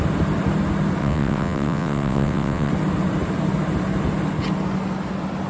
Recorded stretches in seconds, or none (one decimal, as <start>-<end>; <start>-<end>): 0.0-1.0; 2.7-5.5